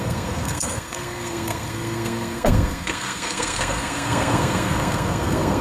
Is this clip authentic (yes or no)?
no